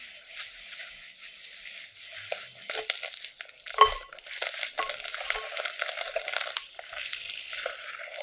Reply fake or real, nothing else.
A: real